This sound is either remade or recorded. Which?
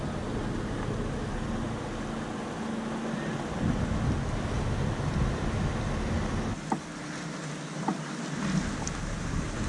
recorded